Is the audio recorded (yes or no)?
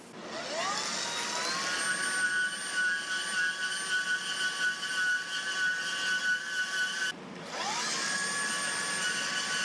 yes